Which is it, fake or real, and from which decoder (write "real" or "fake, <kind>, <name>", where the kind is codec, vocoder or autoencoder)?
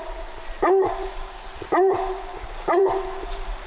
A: fake, vocoder, BigVGAN v2